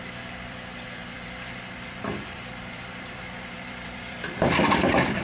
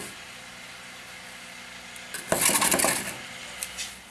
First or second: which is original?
second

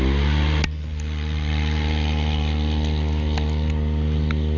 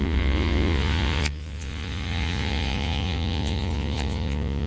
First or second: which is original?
first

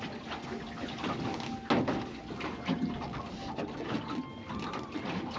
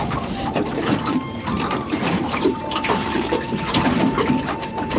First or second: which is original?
first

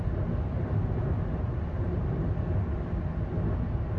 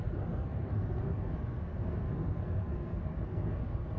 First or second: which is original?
first